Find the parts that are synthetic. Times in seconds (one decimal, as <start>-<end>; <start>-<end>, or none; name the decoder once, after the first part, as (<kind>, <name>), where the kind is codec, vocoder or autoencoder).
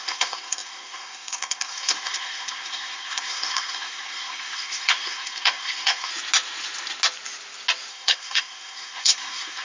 0.0-6.1 (codec, SNAC); 7.9-9.6